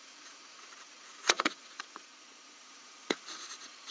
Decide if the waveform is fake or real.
fake